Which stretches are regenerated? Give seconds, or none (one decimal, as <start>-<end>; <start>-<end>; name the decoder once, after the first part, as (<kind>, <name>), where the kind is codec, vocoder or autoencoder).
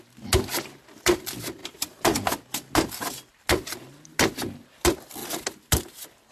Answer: none